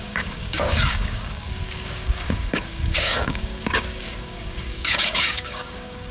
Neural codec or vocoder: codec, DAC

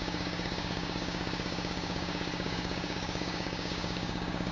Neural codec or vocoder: codec, DAC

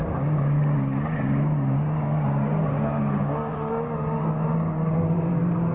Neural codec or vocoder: codec, DAC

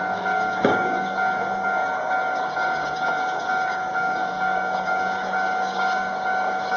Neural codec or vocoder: codec, DAC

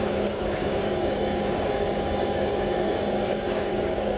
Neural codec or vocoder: codec, DAC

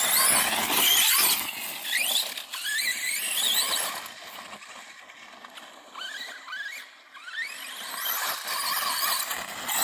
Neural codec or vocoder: none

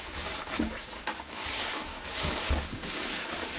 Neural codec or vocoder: codec, DAC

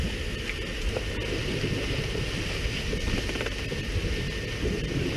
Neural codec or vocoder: none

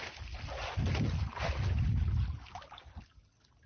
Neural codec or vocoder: none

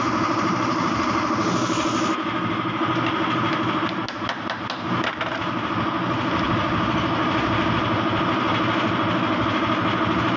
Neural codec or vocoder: none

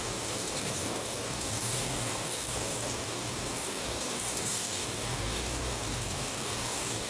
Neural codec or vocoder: codec, DAC